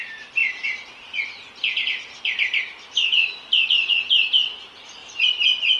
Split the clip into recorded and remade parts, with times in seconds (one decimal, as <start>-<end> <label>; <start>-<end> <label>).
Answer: 0.0-5.8 recorded